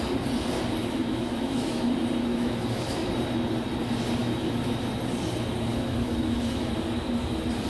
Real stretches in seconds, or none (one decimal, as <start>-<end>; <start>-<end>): 0.0-0.8; 1.8-2.3; 3.1-4.2; 4.9-5.7; 6.7-7.7